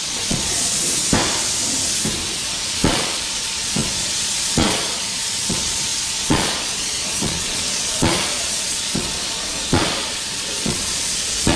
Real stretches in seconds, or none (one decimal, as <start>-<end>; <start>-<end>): 1.0-2.3